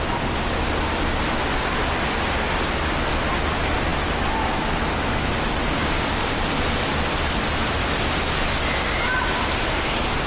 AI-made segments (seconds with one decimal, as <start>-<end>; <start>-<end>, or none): none